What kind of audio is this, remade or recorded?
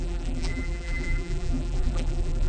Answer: remade